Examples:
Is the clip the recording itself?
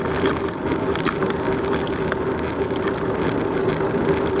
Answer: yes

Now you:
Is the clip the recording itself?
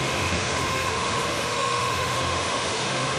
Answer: no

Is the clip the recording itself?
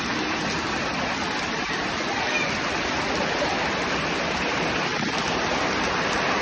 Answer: yes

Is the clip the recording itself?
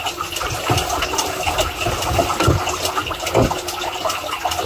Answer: yes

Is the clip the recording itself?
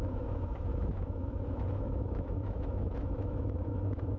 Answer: no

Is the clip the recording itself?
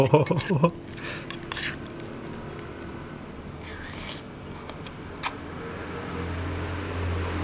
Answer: yes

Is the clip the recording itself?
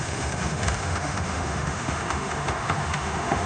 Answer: no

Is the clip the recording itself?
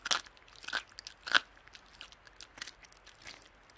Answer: yes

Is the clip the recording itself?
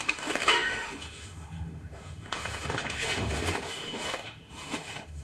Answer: no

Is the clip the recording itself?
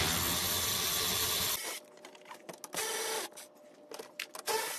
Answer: yes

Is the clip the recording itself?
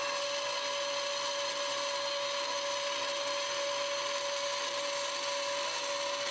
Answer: yes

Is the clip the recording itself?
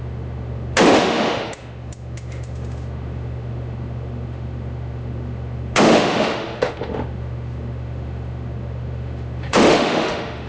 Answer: no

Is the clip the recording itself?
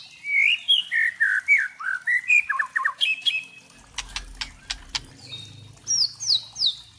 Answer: yes